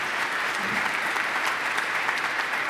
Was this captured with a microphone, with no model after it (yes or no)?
yes